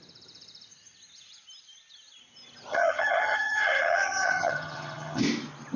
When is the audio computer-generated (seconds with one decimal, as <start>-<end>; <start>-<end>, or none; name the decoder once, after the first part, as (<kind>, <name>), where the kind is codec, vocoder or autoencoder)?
2.7-5.2 (vocoder, HiFi-GAN)